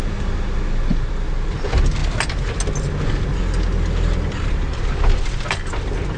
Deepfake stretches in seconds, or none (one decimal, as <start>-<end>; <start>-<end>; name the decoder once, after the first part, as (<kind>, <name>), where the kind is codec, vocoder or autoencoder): none